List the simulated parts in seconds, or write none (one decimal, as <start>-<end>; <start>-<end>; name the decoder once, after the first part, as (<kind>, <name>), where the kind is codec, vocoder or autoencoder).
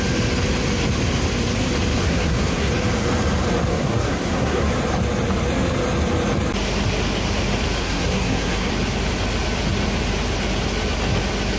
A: 2.0-2.7 (codec, SNAC); 3.7-4.7; 7.8-8.7